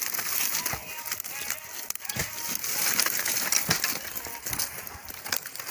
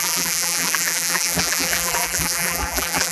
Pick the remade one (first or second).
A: second